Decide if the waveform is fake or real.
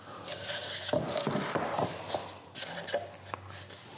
real